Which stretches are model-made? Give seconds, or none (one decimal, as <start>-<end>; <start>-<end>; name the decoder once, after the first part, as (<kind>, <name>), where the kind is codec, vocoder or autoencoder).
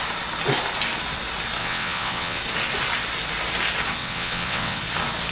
1.6-2.4 (vocoder, WaveNeXt); 4.0-4.8